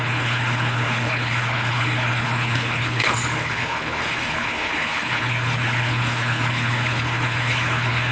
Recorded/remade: remade